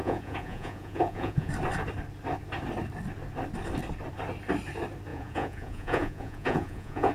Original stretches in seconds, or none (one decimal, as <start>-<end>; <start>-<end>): 1.5-5.1